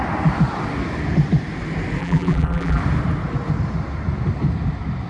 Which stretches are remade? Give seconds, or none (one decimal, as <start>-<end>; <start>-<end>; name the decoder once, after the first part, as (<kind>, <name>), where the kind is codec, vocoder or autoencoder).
2.0-2.8 (vocoder, BigVGAN v2)